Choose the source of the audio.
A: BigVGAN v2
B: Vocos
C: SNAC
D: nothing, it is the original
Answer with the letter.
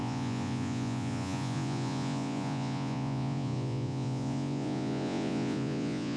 B